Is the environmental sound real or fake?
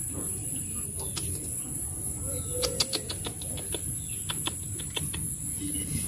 real